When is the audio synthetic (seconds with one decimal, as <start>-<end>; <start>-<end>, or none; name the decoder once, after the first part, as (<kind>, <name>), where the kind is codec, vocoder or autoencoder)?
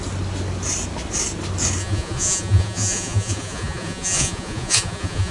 1.8-5.3 (vocoder, Vocos)